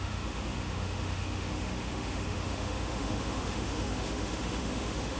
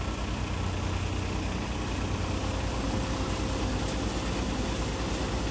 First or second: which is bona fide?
second